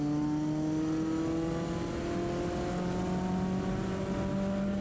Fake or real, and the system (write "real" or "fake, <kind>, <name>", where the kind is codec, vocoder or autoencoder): real